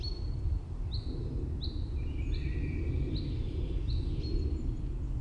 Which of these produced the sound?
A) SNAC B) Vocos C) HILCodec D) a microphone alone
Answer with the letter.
D